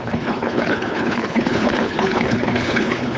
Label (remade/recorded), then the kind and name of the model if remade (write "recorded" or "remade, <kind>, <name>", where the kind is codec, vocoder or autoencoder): remade, codec, HILCodec